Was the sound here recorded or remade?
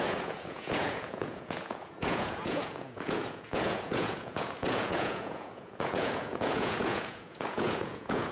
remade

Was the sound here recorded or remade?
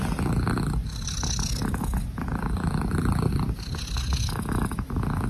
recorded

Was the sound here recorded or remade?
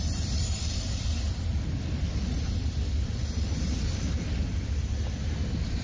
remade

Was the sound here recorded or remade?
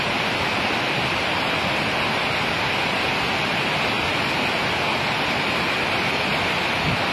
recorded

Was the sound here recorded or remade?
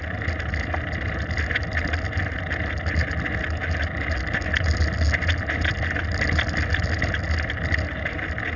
recorded